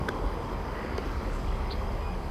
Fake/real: fake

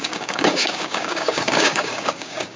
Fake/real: fake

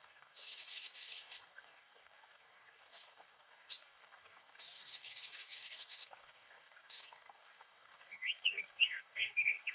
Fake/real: fake